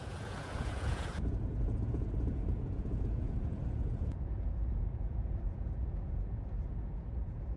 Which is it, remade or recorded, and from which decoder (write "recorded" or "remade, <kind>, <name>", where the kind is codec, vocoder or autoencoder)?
remade, vocoder, Vocos